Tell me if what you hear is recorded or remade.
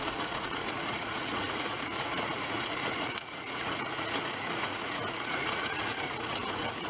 remade